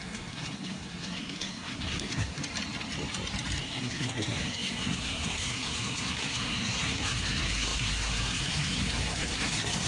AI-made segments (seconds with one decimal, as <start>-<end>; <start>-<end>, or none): 0.0-2.4; 3.6-9.9